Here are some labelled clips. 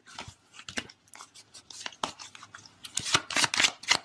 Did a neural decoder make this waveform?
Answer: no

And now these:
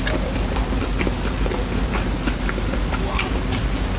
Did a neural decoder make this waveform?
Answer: no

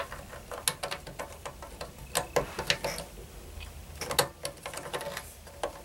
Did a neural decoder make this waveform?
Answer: no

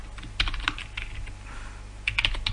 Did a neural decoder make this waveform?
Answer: no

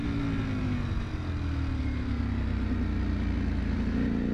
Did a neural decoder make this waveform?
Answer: no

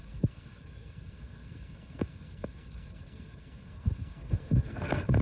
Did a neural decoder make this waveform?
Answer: yes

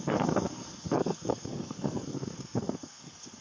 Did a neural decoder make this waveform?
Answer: yes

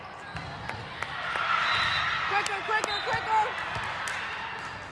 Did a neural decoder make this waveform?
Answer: no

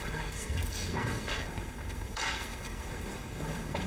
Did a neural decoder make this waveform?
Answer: yes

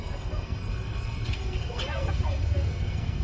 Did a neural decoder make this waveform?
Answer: yes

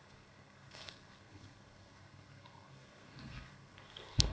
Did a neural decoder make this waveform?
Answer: yes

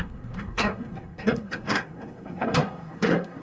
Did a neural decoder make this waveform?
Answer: yes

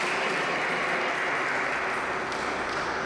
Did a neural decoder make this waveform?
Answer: no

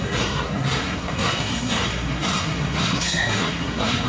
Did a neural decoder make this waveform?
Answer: yes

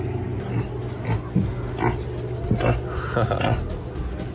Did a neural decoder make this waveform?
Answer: no